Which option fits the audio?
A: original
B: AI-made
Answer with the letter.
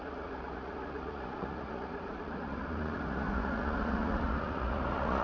B